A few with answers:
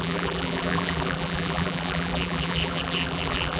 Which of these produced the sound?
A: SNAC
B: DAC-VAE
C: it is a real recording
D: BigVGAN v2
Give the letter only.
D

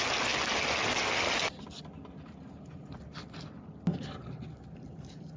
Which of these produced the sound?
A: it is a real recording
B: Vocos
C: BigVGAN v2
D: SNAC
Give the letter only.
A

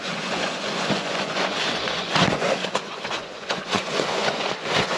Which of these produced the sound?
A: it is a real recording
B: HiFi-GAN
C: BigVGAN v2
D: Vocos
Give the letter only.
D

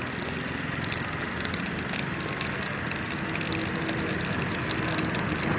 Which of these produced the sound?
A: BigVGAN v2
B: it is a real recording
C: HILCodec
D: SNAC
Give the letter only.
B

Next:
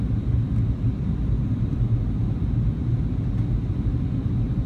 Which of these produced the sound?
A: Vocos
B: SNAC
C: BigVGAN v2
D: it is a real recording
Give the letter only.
D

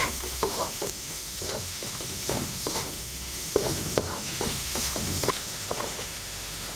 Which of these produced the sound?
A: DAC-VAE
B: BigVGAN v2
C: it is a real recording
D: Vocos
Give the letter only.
A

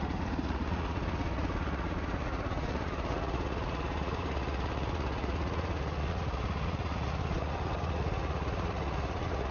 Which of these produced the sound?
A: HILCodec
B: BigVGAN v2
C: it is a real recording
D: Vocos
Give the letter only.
D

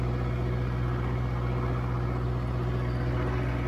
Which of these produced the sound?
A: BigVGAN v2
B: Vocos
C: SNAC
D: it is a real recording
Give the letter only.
D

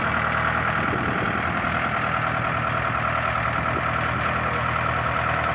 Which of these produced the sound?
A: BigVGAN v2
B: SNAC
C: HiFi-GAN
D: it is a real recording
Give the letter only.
D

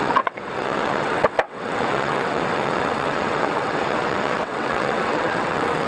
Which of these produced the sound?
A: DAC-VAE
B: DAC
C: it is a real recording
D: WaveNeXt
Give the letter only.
D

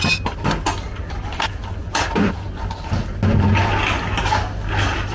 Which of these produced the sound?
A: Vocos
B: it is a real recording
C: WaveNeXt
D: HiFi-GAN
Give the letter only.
B